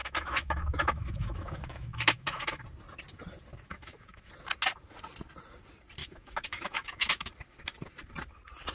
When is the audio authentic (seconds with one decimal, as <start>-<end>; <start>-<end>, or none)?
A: 2.6-3.5; 4.3-6.0; 7.3-8.7